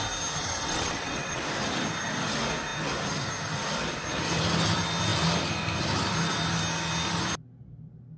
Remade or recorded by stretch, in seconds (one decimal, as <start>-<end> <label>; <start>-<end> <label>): 0.0-0.4 recorded; 0.4-1.4 remade; 1.4-8.2 recorded